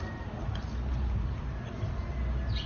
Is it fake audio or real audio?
real